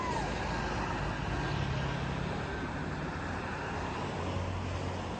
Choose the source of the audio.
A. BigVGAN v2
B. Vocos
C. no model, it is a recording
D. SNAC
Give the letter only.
C